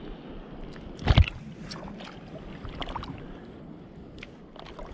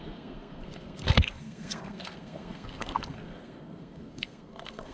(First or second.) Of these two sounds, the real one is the first